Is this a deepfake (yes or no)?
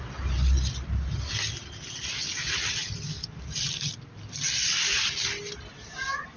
no